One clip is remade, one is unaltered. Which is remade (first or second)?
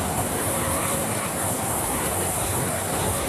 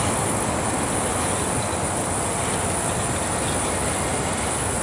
first